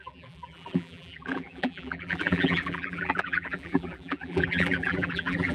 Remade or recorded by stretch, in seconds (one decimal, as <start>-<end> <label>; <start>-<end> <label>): 0.0-5.5 remade